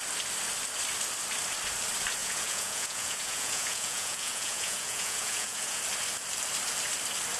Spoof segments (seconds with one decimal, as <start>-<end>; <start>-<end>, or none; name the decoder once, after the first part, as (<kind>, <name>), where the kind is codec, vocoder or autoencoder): 2.2-5.8 (vocoder, Vocos)